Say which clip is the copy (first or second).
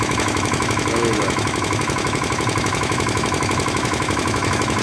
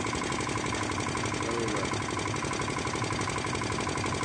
first